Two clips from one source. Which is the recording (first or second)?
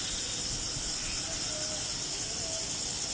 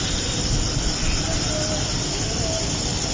first